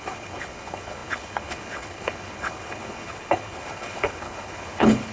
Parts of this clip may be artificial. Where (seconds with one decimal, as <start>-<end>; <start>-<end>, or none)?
0.0-5.1